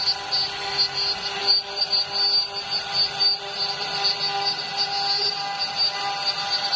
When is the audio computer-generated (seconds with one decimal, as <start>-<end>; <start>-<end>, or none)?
none